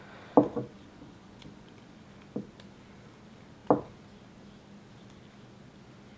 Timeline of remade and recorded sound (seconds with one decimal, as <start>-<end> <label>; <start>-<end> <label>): 0.0-0.7 recorded; 0.7-2.0 remade; 2.0-6.2 recorded